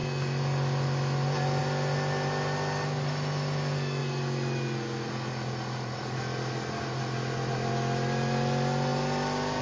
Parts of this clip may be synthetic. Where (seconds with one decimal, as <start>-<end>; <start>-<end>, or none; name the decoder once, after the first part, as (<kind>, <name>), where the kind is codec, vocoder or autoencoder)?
none